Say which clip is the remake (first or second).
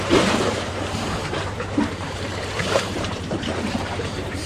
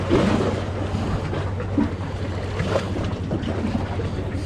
first